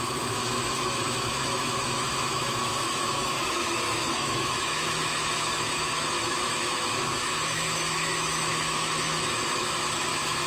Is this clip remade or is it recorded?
remade